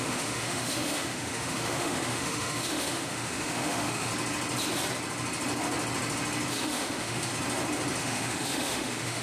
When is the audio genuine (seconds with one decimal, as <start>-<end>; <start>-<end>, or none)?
4.1-6.5; 7.3-8.0